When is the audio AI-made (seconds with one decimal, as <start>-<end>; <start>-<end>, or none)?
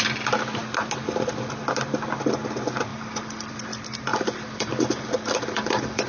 2.9-3.5; 4.1-6.1